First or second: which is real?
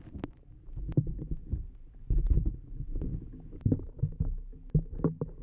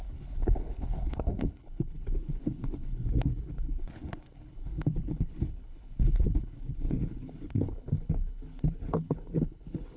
first